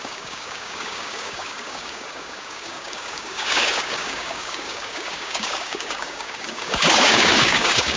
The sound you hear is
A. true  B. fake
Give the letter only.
B